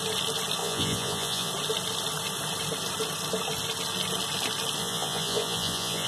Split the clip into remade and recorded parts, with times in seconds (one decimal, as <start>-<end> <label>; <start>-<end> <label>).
0.0-0.6 recorded; 0.6-1.5 remade; 1.5-4.8 recorded; 4.8-6.1 remade